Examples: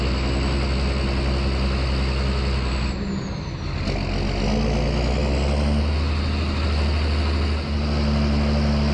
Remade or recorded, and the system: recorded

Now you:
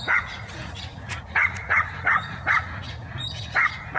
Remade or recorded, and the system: remade, vocoder, Vocos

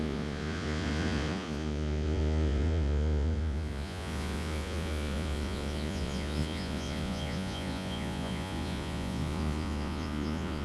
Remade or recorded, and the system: remade, vocoder, Vocos